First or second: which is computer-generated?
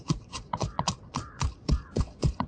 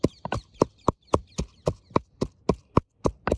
first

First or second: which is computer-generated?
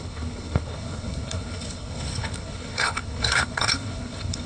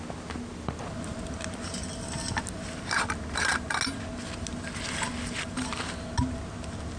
first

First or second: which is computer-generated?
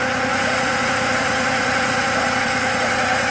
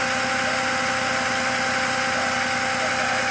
first